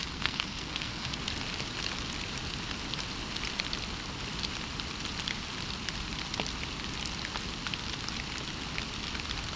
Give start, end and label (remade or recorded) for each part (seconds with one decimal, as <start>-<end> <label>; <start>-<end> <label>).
0.0-1.2 remade; 1.2-9.6 recorded